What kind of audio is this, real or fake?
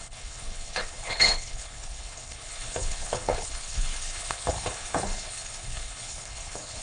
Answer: fake